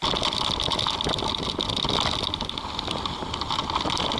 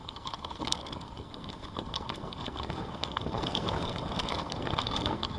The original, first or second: first